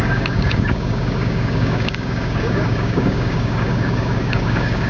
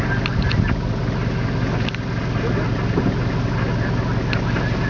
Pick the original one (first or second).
second